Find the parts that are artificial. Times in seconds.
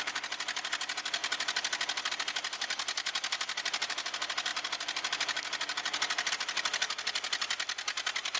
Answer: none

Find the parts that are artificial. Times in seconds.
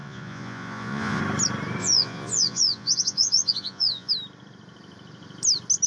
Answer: 0.0-1.2 (vocoder, Vocos); 1.8-4.1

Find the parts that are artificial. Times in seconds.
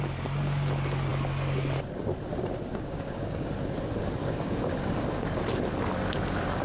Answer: 2.7-3.5 (codec, DAC); 4.2-5.4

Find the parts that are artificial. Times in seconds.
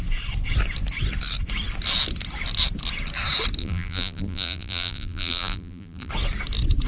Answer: 3.6-6.1 (vocoder, BigVGAN v2)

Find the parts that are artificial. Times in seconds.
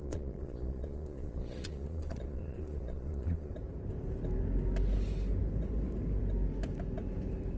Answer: 0.0-3.5 (vocoder, Vocos)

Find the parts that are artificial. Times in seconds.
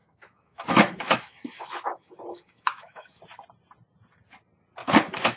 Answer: 0.0-3.2 (autoencoder, DAC-VAE); 4.8-5.4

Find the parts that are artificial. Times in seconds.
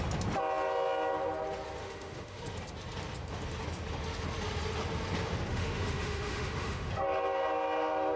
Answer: 1.8-2.4 (autoencoder, DAC-VAE); 5.5-6.9